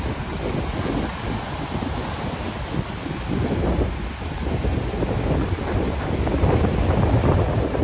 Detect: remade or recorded recorded